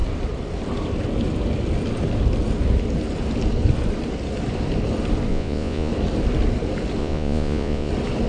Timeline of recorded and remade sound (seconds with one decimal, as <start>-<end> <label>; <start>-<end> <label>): 0.0-5.3 recorded; 5.3-5.9 remade; 5.9-7.0 recorded; 7.0-7.9 remade; 7.9-8.3 recorded